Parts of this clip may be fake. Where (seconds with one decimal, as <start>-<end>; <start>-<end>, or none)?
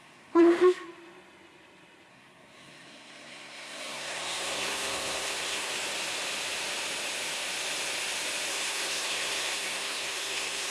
0.0-0.4; 2.1-5.7; 8.5-10.7